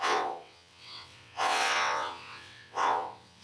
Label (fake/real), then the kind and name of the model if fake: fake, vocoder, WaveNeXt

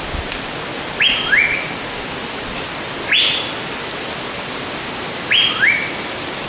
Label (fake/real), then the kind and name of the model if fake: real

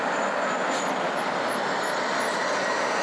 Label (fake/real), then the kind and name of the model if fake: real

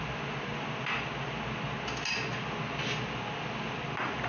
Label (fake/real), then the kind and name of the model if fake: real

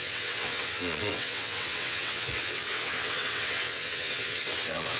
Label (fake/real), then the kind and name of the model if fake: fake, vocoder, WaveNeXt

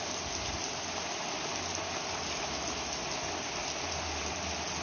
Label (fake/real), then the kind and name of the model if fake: real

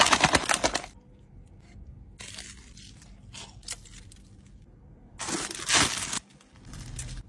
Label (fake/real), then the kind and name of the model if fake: real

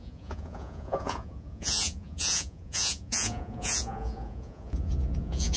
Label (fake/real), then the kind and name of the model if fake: fake, vocoder, Vocos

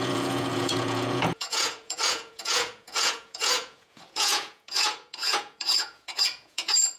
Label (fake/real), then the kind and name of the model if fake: fake, vocoder, Vocos